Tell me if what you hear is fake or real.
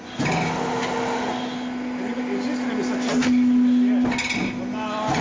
real